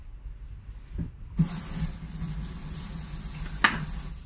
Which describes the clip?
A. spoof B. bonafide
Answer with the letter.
B